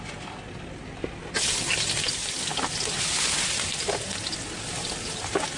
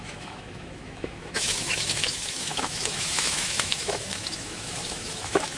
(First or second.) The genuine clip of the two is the first